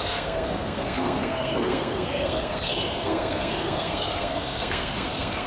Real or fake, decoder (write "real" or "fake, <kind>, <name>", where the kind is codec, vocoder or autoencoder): fake, codec, SNAC